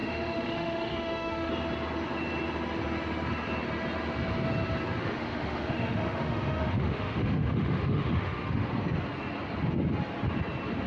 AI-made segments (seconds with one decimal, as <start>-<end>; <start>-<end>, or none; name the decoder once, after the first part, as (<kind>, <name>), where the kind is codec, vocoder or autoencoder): 0.0-1.5 (autoencoder, DAC-VAE); 5.0-8.7